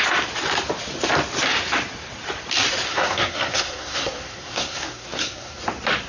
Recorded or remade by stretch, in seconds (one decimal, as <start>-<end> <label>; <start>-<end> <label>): 0.0-2.9 recorded; 2.9-5.6 remade; 5.6-6.1 recorded